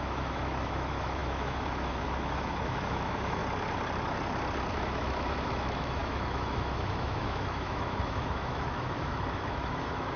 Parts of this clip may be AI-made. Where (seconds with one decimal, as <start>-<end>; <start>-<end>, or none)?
0.0-3.4; 4.7-10.2